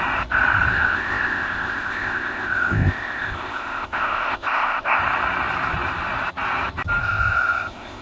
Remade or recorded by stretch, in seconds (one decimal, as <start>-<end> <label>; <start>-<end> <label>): 0.0-0.7 recorded; 0.7-5.0 remade; 5.0-7.0 recorded; 7.0-8.0 remade